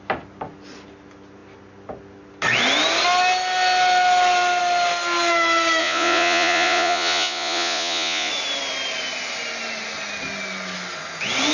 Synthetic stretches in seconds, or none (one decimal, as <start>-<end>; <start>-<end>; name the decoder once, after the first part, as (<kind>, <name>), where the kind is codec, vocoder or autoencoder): 5.8-8.3 (vocoder, Vocos)